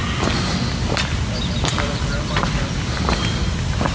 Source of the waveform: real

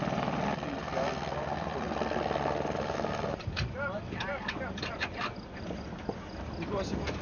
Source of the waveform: real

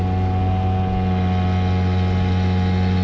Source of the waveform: real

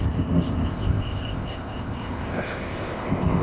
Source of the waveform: fake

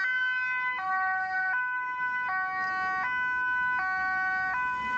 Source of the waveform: real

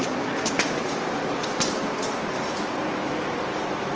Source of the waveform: real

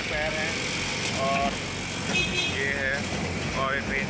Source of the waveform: real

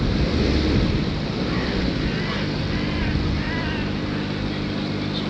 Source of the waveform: real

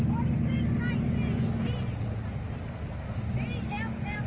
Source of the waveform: real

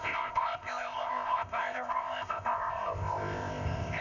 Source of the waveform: fake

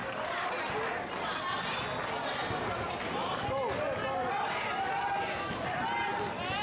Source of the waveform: real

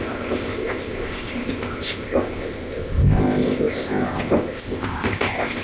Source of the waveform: fake